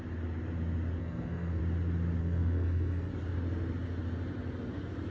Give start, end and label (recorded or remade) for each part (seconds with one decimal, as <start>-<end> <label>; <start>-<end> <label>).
0.0-1.0 recorded; 1.0-1.6 remade; 1.6-2.2 recorded; 2.2-3.1 remade; 3.1-5.1 recorded